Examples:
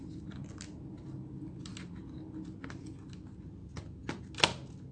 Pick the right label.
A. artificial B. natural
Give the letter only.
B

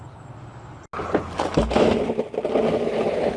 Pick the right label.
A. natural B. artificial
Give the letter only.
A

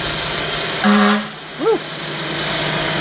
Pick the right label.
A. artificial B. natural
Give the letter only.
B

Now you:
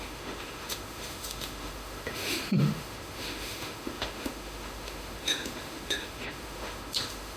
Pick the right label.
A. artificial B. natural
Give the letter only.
A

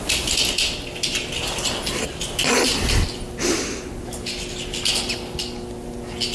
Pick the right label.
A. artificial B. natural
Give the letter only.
B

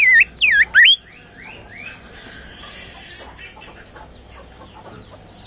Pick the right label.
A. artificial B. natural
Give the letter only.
B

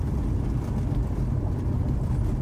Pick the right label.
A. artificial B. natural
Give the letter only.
B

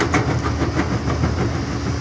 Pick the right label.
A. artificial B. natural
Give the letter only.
B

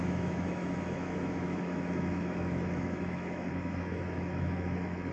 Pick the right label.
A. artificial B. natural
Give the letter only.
A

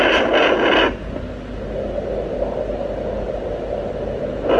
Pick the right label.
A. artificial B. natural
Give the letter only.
B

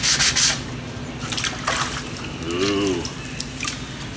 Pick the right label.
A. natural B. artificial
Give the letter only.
A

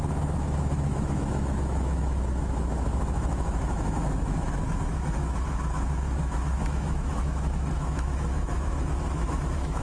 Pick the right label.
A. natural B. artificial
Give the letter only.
B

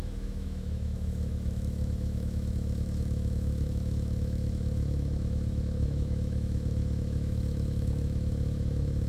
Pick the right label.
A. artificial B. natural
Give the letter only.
A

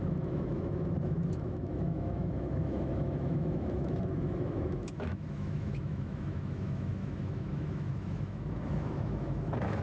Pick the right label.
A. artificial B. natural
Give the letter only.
A